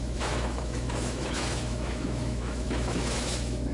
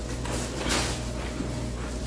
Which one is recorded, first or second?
second